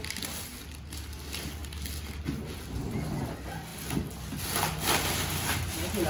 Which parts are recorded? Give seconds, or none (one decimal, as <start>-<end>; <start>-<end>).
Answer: 0.0-6.1